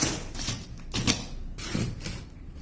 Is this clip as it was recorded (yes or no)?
yes